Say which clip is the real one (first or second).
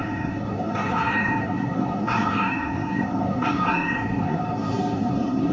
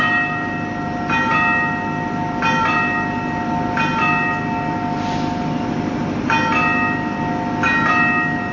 second